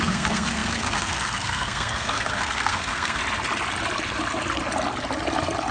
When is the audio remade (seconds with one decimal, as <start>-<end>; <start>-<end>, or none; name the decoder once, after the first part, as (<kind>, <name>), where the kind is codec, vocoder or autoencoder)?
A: 0.0-3.2 (codec, SNAC)